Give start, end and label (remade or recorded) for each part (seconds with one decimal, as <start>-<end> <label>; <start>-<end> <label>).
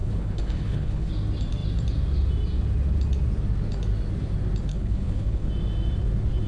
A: 0.0-1.1 remade; 1.1-4.7 recorded; 4.7-5.5 remade; 5.5-6.5 recorded